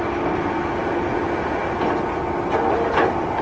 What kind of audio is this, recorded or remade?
recorded